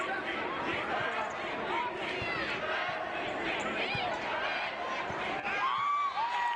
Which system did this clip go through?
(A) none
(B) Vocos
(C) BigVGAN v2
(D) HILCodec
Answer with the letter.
A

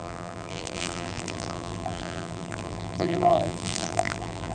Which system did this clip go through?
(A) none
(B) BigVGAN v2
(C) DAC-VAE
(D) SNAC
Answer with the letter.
B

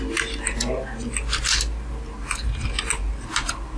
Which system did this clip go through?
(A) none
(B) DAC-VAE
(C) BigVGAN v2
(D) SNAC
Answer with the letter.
A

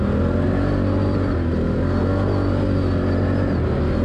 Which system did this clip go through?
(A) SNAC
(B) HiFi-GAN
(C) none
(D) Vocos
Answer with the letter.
C